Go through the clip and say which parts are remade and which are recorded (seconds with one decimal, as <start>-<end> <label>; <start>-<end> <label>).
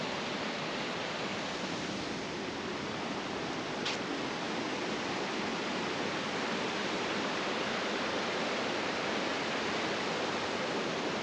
0.0-4.1 remade; 4.1-4.8 recorded; 4.8-5.5 remade; 5.5-6.1 recorded; 6.1-9.3 remade; 9.3-10.0 recorded; 10.0-11.2 remade